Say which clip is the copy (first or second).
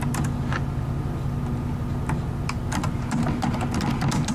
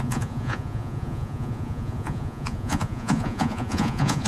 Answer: second